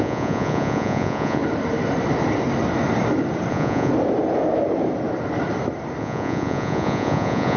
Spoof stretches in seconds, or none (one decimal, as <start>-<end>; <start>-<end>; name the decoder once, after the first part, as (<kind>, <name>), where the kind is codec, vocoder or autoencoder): 0.0-1.4 (vocoder, Vocos); 3.5-3.9; 6.0-7.6